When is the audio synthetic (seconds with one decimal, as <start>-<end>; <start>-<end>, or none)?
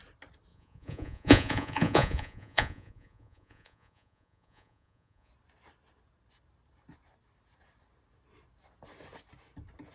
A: 0.5-5.3